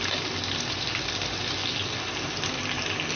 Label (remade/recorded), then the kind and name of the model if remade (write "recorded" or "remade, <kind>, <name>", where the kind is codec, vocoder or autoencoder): recorded